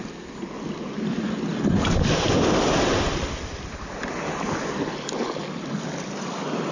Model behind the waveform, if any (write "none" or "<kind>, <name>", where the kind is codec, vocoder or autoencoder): none